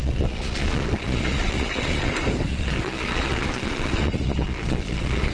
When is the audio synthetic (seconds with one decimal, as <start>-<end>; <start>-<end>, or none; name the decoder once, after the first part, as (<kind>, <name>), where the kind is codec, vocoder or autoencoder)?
0.0-2.1 (vocoder, Vocos); 2.5-5.3